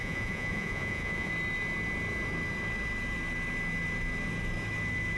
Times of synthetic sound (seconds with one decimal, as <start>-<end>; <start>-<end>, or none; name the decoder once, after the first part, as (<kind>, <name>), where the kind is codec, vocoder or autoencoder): 0.0-1.3 (vocoder, Vocos)